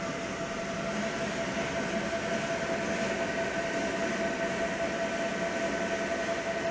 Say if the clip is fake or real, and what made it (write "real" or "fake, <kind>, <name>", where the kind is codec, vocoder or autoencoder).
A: real